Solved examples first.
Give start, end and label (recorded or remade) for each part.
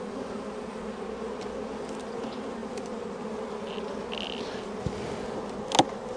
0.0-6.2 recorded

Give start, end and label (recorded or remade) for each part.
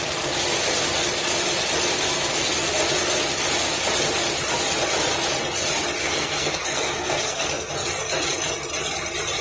0.0-6.0 recorded; 6.0-7.7 remade; 7.7-9.4 recorded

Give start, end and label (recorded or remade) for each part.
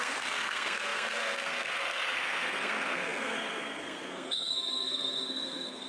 0.0-5.9 remade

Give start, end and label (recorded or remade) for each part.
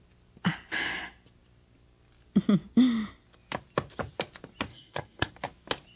0.0-4.7 recorded; 4.7-5.3 remade; 5.3-6.0 recorded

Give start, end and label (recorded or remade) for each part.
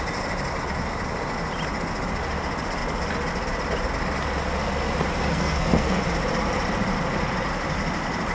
0.0-5.3 recorded; 5.3-6.0 remade; 6.0-8.3 recorded